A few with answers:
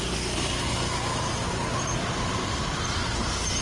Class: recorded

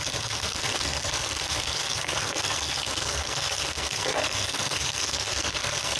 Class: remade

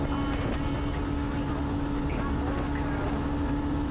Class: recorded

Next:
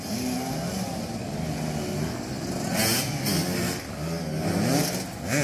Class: recorded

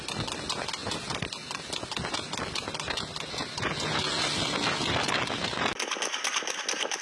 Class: recorded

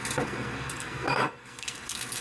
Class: remade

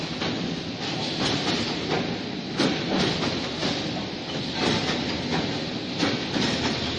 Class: recorded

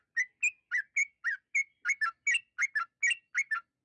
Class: recorded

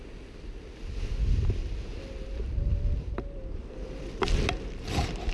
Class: recorded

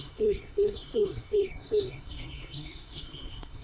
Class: remade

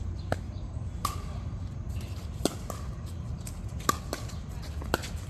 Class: recorded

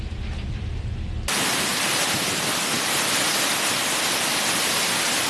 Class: recorded